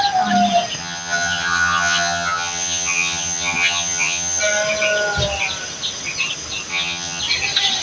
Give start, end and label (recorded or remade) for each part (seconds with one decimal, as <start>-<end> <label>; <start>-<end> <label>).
0.0-0.8 recorded; 0.8-4.4 remade; 4.4-6.7 recorded; 6.7-7.2 remade; 7.2-7.8 recorded